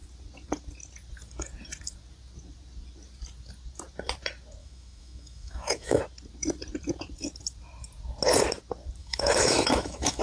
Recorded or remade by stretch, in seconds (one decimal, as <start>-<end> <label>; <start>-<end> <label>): 0.0-4.6 recorded; 4.6-6.0 remade; 6.0-9.0 recorded; 9.0-10.2 remade